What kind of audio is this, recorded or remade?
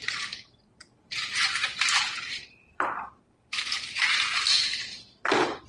remade